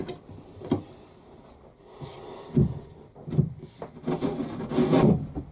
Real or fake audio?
real